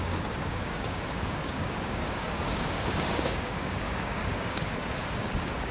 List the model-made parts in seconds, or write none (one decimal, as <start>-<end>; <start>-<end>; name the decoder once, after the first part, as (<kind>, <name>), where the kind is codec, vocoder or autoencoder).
0.0-5.7 (codec, DAC)